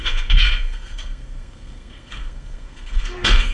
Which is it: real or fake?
fake